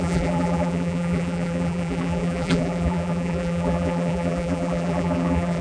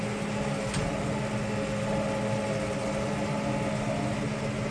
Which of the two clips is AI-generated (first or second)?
first